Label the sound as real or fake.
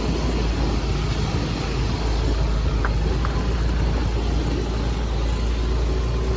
real